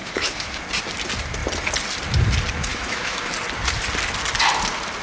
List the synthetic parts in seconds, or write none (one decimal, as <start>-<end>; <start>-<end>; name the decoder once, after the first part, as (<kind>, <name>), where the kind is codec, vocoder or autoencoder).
0.0-0.6 (autoencoder, DAC-VAE); 2.7-3.3